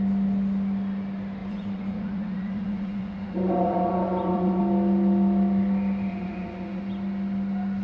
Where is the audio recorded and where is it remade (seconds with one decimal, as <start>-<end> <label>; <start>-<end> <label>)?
0.0-1.4 recorded; 1.4-4.6 remade; 4.6-6.1 recorded; 6.1-6.8 remade; 6.8-7.8 recorded